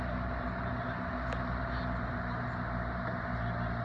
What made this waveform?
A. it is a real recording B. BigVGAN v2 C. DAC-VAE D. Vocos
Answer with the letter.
A